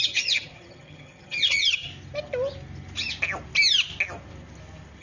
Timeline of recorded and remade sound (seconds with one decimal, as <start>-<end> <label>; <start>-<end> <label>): 0.0-1.9 remade; 1.9-5.0 recorded

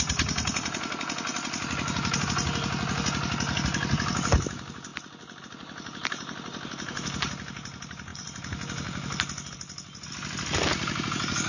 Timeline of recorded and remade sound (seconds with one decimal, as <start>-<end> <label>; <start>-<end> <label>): 0.0-11.5 recorded